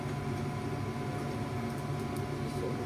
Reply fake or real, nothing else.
real